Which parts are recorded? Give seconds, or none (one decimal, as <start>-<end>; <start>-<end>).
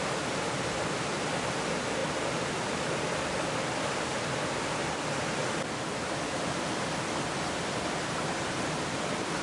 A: 0.0-9.4